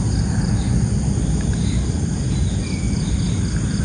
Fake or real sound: real